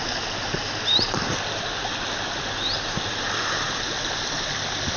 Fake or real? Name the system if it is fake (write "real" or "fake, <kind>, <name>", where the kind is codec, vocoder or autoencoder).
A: real